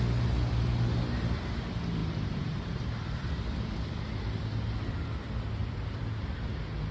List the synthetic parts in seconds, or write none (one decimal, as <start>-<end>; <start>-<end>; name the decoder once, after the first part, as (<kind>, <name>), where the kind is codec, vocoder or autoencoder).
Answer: 2.0-4.2 (vocoder, BigVGAN v2); 5.6-6.5